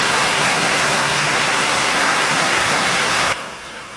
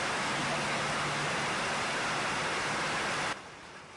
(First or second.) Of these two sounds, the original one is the second